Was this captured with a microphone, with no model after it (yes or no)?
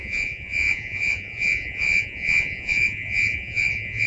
no